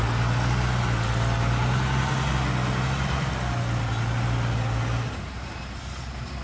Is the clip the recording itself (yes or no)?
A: yes